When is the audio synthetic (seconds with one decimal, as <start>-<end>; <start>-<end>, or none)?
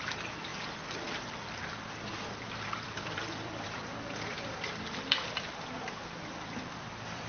0.0-0.5; 1.1-7.3